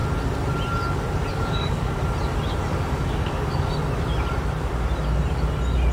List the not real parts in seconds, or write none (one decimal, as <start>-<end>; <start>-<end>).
1.3-2.0; 2.7-3.7